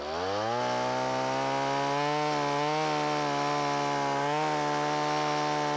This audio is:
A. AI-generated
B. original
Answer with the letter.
B